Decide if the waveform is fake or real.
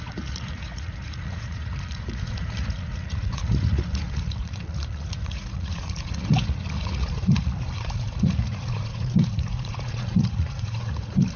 fake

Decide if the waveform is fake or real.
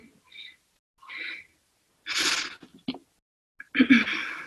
real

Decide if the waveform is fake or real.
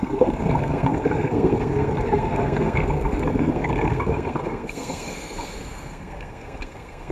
fake